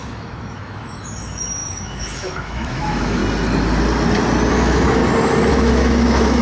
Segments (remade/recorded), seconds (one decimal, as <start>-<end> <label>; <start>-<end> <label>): 0.0-3.2 remade; 3.2-4.5 recorded; 4.5-5.0 remade; 5.0-5.5 recorded; 5.5-6.4 remade